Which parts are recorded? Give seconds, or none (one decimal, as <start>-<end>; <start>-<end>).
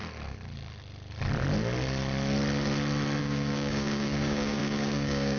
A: 0.0-3.2